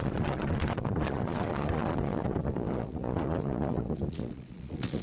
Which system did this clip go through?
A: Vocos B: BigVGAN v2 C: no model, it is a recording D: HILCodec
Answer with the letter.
A